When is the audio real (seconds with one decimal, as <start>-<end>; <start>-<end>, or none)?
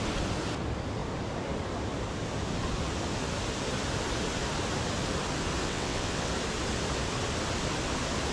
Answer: 0.0-5.6; 6.3-8.3